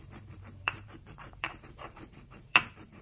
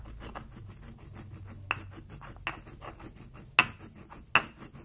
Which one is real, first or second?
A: second